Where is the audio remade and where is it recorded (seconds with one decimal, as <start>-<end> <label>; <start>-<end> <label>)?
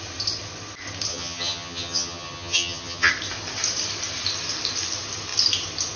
0.0-1.1 recorded; 1.1-3.1 remade; 3.1-6.0 recorded